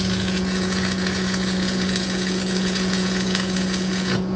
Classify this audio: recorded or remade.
remade